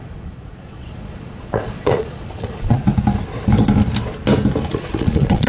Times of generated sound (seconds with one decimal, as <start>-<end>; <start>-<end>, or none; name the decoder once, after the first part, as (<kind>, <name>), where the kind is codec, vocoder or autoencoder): 0.0-2.8 (vocoder, Vocos); 4.7-5.5